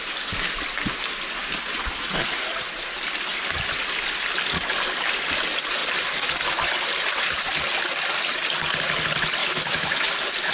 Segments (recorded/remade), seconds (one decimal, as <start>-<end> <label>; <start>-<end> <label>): 0.0-9.4 recorded; 9.4-10.1 remade; 10.1-10.5 recorded